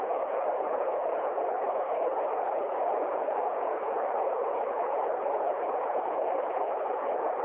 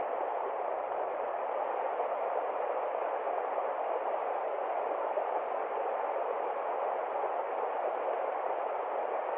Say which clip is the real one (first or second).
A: second